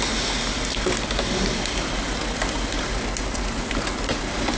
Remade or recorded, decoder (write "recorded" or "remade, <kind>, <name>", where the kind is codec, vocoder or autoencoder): recorded